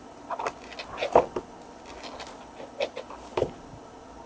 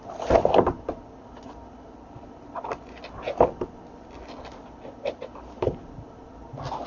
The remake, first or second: second